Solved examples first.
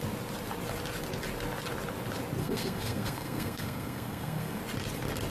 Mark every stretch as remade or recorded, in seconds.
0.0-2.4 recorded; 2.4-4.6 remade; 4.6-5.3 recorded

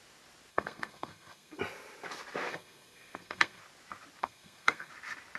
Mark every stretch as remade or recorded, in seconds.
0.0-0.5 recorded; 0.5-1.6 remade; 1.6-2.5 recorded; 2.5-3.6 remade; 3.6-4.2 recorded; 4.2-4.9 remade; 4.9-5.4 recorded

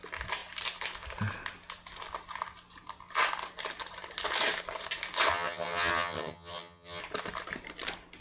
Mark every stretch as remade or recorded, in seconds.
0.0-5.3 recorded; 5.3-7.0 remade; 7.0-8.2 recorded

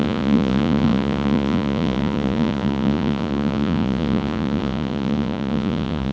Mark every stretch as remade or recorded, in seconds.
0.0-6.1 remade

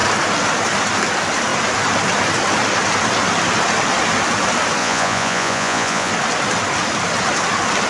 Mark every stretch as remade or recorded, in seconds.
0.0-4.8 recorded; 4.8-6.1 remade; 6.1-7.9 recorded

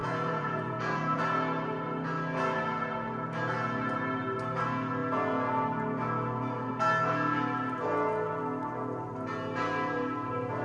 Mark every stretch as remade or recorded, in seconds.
0.0-1.2 remade; 1.2-10.6 recorded